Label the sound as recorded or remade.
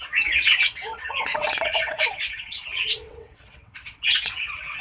remade